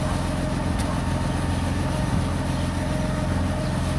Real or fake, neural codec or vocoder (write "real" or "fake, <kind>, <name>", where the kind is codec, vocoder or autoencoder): real